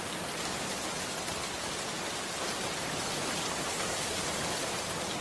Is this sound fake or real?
real